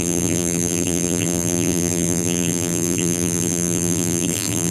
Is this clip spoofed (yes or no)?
yes